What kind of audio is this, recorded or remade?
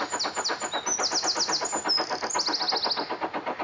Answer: recorded